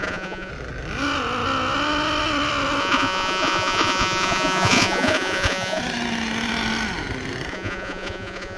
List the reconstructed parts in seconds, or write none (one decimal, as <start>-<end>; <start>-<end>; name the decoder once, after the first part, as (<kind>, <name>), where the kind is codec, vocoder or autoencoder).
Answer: 0.0-0.5 (vocoder, Vocos); 2.8-5.8; 7.5-8.6